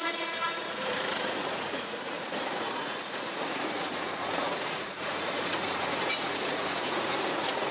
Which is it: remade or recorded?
remade